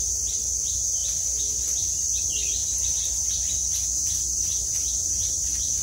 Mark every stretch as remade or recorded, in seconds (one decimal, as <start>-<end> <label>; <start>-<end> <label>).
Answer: 0.0-5.8 recorded